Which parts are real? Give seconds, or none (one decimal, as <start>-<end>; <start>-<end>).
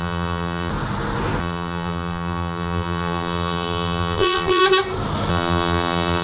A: 0.7-1.4; 4.6-5.3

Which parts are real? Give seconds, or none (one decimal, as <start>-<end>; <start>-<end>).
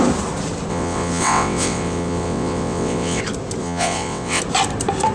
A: 0.0-0.7; 3.2-3.6; 4.4-5.1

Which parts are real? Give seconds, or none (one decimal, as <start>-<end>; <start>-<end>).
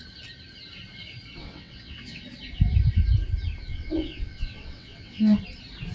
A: 0.0-1.4; 2.2-3.7; 5.4-5.9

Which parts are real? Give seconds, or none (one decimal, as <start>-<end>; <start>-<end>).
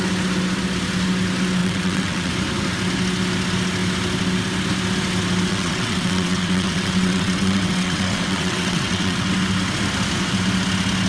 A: 0.0-1.6; 2.3-5.5; 9.3-11.1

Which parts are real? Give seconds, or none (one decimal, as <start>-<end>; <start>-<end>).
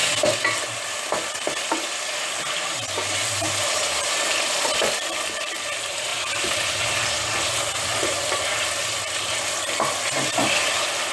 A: 0.0-11.1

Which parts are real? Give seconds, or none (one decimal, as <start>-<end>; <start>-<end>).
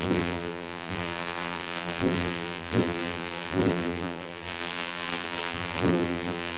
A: none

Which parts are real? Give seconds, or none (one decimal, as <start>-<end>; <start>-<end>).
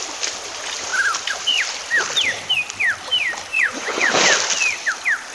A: 0.0-3.5; 4.2-5.3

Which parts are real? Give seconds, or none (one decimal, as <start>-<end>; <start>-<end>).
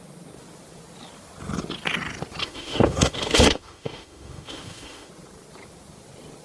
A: 0.0-2.4; 5.1-6.4